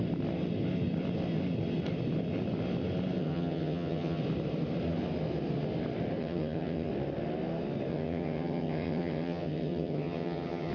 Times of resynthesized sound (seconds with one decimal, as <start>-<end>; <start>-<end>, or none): 3.2-4.2; 6.2-6.9; 7.9-10.7